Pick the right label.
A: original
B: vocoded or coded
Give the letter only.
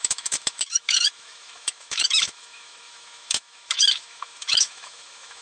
B